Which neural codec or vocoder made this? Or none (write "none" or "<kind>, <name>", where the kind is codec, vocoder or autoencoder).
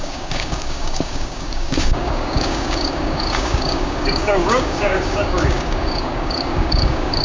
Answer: codec, DAC